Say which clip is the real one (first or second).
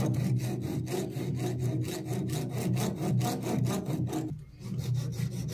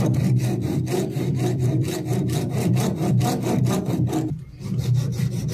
first